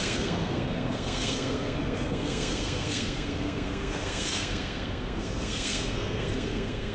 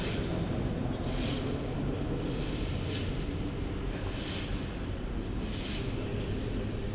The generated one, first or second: first